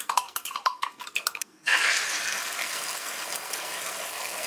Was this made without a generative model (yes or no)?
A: no